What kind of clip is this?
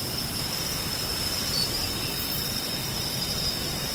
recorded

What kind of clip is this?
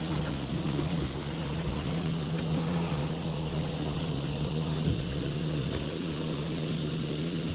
remade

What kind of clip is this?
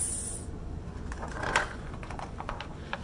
remade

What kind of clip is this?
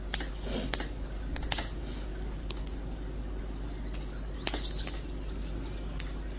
recorded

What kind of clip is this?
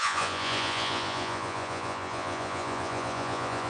remade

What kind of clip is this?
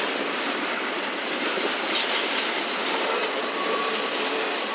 recorded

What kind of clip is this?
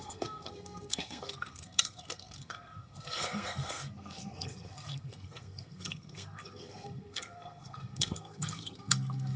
remade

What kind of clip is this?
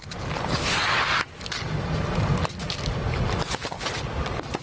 recorded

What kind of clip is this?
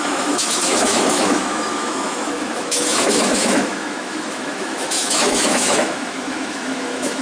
remade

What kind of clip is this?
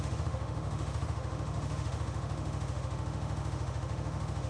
remade